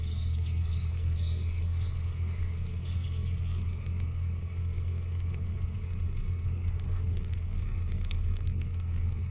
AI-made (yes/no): yes